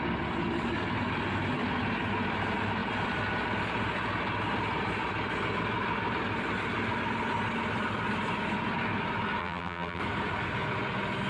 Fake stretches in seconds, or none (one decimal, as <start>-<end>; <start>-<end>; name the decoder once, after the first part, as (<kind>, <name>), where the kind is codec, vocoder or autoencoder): 9.4-10.0 (vocoder, BigVGAN v2)